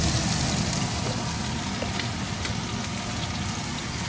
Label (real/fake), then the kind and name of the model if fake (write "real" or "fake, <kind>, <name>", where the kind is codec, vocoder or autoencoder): real